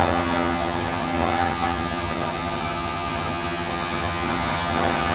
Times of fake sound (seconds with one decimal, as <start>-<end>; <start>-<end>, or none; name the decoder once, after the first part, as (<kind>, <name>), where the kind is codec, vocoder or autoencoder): 0.0-5.1 (vocoder, HiFi-GAN)